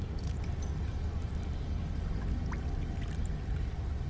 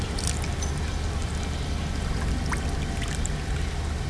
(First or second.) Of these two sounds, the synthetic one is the first